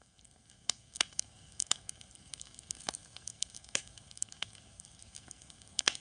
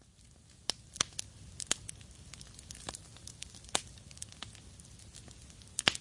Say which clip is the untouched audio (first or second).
second